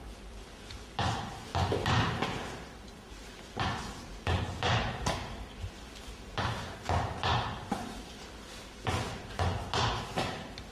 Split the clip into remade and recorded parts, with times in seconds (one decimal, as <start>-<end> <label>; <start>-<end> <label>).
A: 0.0-7.3 recorded; 7.3-8.3 remade; 8.3-10.7 recorded